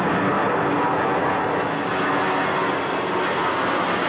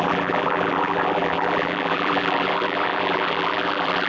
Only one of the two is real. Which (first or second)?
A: first